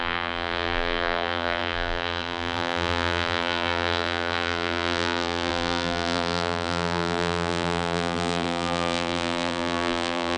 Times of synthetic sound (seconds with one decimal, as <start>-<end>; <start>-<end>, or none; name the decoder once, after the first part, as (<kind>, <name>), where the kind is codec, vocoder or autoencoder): 0.0-10.4 (vocoder, BigVGAN v2)